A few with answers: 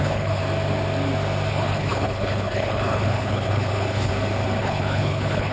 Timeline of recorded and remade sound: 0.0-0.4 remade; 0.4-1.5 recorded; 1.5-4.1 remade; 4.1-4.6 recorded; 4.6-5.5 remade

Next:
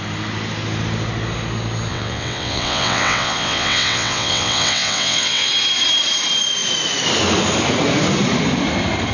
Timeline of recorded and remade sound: 0.0-1.9 recorded; 1.9-5.5 remade; 5.5-9.1 recorded

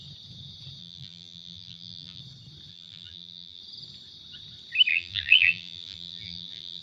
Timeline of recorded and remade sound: 0.0-0.8 recorded; 0.8-2.2 remade; 2.2-2.7 recorded; 2.7-3.6 remade; 3.6-4.9 recorded; 4.9-6.8 remade

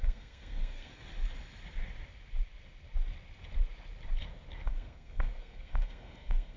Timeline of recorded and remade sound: 0.0-0.9 remade; 0.9-4.7 recorded; 4.7-6.6 remade

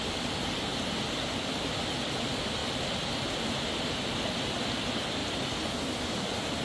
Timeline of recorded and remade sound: 0.0-0.7 remade; 0.7-1.4 recorded; 1.4-2.6 remade; 2.6-4.5 recorded; 4.5-5.2 remade; 5.2-6.0 recorded; 6.0-6.6 remade